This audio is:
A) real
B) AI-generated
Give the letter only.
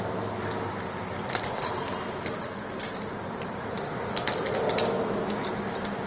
B